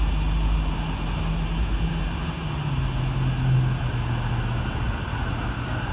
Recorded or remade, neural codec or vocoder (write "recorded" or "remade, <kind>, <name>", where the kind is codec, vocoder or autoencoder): recorded